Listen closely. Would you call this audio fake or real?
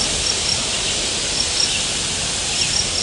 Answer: real